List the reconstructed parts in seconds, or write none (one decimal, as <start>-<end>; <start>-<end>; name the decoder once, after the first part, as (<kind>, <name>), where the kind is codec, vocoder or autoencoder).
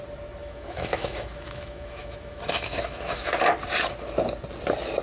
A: 0.4-3.4 (autoencoder, DAC-VAE)